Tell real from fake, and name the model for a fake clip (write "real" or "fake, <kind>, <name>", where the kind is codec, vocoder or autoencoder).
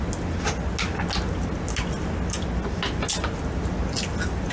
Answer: real